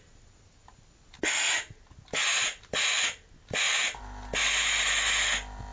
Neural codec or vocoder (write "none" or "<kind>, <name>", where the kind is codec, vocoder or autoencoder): none